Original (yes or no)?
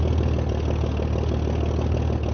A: yes